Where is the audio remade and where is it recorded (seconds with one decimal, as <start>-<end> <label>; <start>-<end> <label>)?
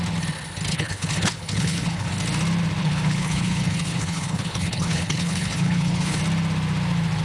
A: 0.0-0.7 recorded; 0.7-2.1 remade; 2.1-2.8 recorded; 2.8-6.2 remade; 6.2-7.2 recorded